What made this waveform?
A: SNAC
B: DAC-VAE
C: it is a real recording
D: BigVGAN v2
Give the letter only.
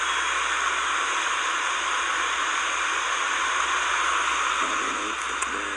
C